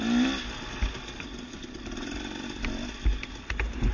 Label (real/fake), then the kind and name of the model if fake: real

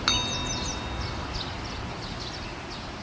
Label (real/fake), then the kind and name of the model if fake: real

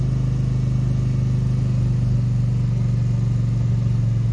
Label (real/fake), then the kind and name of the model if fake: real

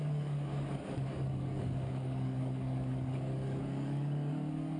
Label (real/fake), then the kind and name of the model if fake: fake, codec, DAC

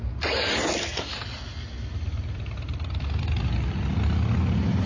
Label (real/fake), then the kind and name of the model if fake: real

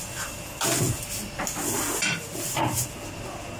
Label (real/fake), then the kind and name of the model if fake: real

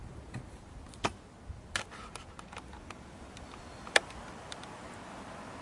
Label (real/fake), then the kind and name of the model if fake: real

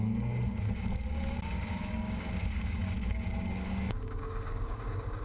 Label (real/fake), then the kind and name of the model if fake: fake, codec, DAC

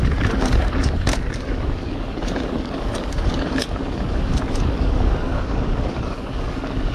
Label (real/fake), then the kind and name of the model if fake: fake, codec, DAC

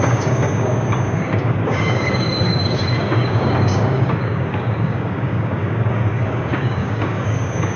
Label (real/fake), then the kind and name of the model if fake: fake, codec, DAC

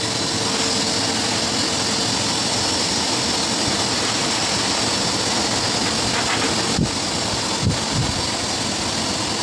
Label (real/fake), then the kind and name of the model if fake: real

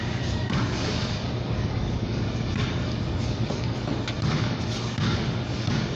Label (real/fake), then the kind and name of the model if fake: fake, codec, DAC